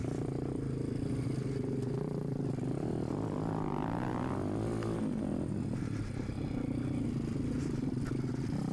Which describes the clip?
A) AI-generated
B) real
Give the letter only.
B